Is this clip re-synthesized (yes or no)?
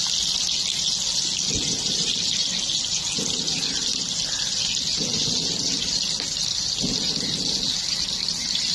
no